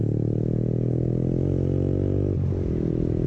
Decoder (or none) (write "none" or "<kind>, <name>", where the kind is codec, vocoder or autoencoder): none